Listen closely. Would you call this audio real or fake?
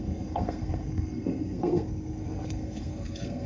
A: fake